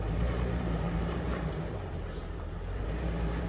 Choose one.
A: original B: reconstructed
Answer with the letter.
B